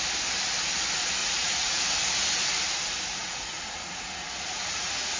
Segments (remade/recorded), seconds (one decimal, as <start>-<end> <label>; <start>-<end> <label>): 0.0-1.2 recorded; 1.2-1.8 remade; 1.8-3.2 recorded; 3.2-5.2 remade